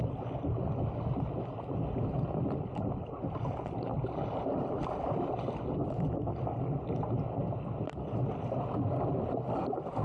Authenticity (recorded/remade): recorded